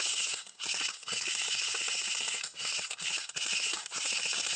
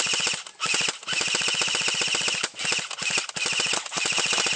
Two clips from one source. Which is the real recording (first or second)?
second